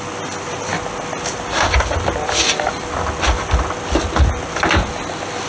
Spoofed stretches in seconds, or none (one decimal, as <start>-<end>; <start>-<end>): none